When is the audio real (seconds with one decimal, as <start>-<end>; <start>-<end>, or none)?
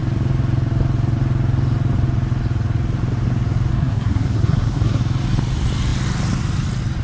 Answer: 0.0-3.7; 5.0-7.0